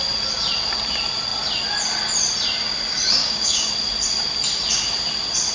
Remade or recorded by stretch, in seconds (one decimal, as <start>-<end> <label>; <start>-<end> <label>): 0.0-3.2 recorded; 3.2-3.7 remade; 3.7-5.5 recorded